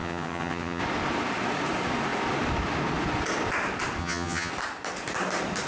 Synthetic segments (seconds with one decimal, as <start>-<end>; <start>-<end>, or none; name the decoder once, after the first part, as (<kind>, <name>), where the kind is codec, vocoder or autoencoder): 0.0-0.8 (vocoder, HiFi-GAN); 4.0-4.5